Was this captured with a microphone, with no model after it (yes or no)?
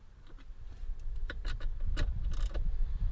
yes